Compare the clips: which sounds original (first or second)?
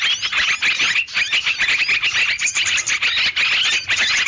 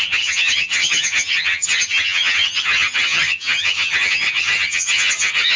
first